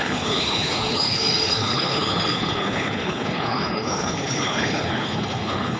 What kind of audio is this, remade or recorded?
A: remade